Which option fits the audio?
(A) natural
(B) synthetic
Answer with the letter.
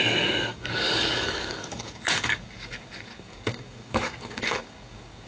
B